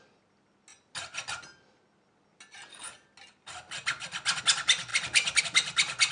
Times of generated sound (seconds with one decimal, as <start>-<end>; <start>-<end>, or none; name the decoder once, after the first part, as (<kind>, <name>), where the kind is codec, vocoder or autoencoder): none